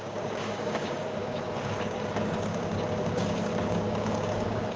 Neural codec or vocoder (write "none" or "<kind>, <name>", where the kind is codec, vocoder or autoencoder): codec, DAC